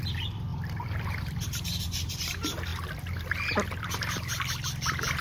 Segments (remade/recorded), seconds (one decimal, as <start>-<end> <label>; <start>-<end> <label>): 0.0-2.7 remade; 2.7-5.2 recorded